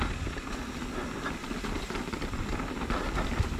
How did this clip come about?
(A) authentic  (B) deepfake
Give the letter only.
A